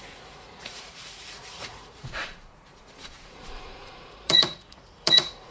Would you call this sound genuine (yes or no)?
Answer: no